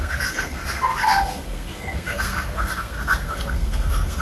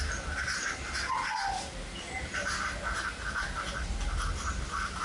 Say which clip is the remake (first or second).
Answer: first